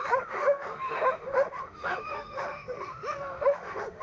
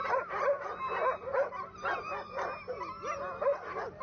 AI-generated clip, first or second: first